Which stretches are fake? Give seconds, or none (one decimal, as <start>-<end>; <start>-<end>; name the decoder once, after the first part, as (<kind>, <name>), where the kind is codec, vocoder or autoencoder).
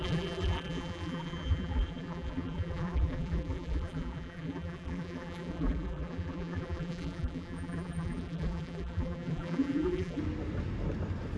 0.0-10.2 (vocoder, BigVGAN v2)